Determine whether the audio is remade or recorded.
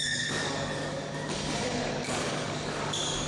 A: remade